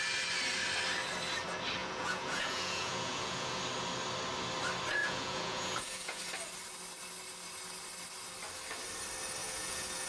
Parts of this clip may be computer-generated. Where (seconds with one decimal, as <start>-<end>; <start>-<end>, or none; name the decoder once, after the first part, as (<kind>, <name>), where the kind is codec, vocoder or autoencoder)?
1.8-3.6 (vocoder, Vocos); 5.0-6.2; 9.4-10.1